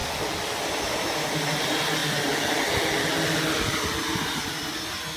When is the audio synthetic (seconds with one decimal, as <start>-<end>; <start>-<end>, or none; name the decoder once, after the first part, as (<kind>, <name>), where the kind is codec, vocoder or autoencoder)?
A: 0.6-2.0 (vocoder, BigVGAN v2)